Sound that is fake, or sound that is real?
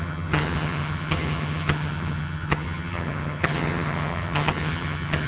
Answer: fake